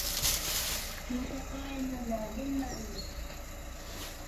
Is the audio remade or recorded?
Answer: recorded